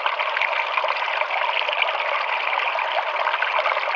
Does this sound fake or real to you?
real